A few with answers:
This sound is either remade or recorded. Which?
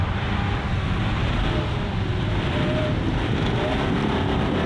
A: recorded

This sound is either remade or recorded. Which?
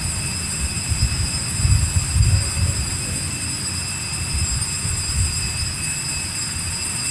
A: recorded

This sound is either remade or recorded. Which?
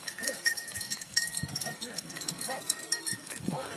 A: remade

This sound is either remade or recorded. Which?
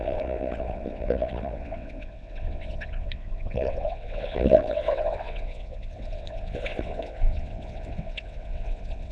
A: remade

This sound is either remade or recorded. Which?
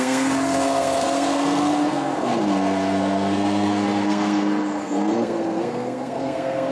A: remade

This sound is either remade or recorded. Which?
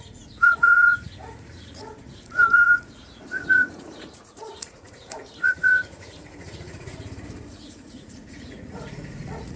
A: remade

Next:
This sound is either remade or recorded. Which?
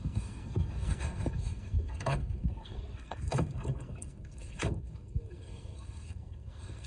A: remade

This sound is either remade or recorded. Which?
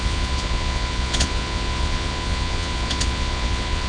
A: remade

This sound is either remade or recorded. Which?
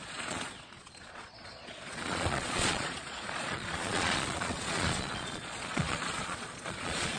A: remade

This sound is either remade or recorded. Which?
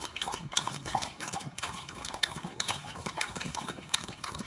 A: remade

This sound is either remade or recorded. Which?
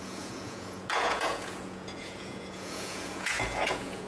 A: remade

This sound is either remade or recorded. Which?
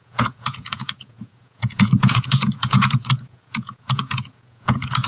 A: remade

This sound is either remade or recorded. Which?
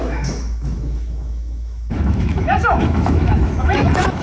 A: remade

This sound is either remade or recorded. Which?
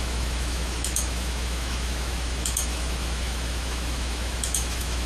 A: remade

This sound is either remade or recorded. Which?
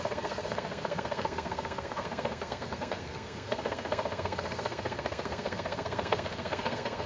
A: remade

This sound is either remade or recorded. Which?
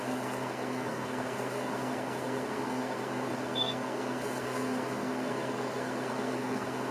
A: remade